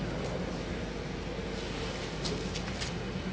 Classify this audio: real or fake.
real